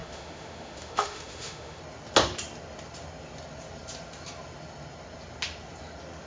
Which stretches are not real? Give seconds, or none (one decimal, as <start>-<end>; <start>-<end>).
0.0-1.8